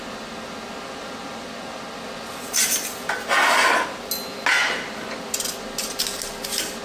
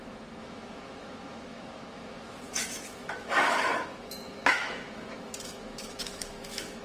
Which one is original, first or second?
first